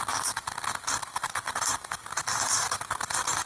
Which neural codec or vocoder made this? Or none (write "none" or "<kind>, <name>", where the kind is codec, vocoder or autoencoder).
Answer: none